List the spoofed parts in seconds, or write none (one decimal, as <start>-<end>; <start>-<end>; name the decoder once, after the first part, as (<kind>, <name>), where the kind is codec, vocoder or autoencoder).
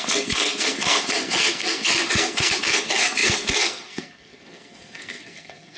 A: 0.0-5.8 (codec, SNAC)